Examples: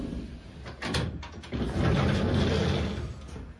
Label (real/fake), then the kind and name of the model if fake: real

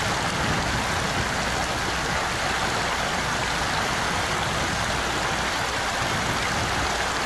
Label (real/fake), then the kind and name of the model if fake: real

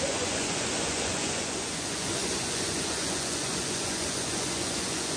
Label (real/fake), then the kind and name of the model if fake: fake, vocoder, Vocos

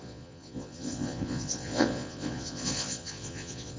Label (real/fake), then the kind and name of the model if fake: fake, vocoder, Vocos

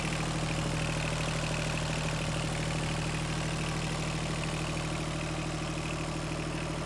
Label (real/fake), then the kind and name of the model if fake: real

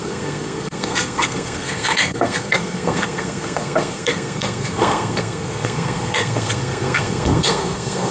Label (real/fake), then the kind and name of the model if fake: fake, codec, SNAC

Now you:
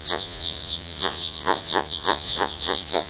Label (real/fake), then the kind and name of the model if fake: fake, vocoder, Vocos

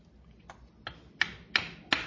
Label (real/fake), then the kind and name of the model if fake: real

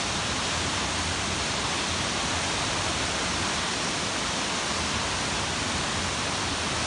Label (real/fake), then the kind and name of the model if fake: real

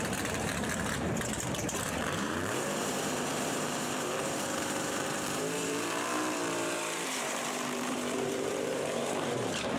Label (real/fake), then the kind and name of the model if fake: fake, vocoder, BigVGAN v2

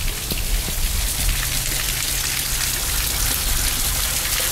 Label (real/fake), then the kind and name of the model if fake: real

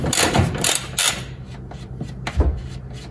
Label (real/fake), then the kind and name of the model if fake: real